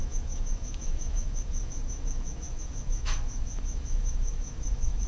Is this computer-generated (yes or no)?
yes